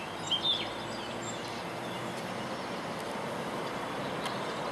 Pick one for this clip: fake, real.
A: real